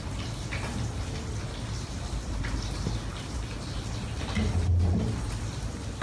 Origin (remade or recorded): recorded